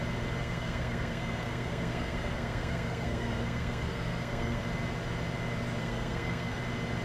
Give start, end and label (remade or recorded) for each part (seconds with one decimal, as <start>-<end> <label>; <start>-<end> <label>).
0.0-0.4 recorded; 0.4-4.6 remade; 4.6-5.8 recorded; 5.8-6.6 remade; 6.6-7.0 recorded